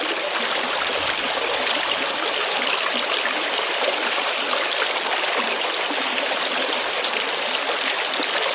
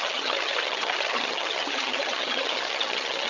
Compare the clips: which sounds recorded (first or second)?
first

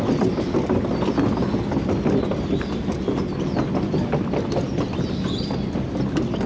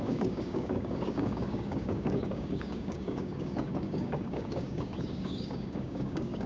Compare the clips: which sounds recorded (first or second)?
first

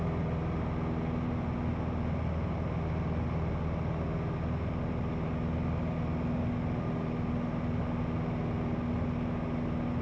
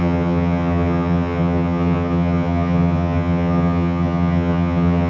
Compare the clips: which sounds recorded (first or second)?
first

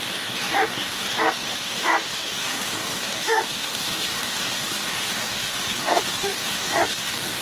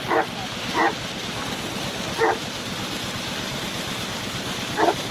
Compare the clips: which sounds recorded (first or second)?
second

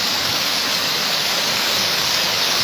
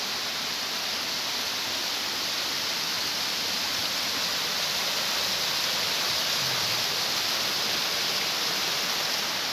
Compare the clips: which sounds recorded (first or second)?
second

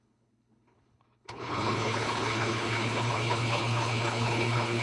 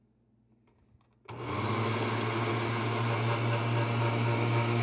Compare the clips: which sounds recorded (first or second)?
second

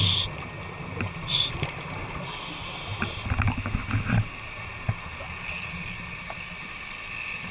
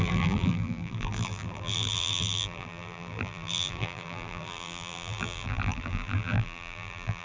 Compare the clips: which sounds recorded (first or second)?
first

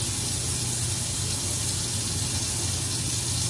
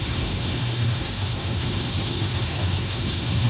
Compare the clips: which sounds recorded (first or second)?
first